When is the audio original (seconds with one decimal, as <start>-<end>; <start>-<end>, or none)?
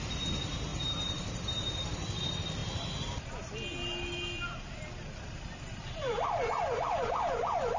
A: 0.0-7.8